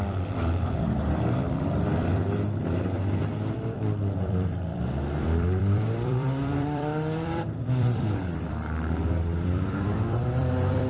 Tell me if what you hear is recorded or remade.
remade